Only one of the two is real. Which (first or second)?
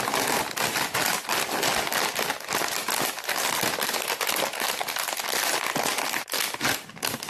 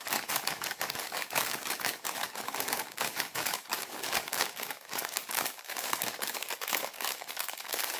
first